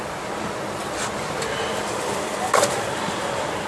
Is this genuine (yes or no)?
yes